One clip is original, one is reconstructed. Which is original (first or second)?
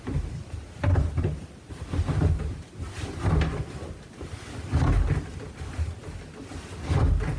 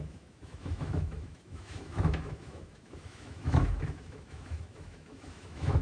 first